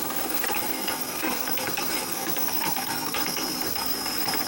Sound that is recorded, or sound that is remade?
remade